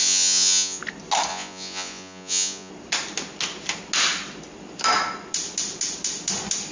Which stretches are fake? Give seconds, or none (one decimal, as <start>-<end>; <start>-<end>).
0.0-0.8; 1.3-2.7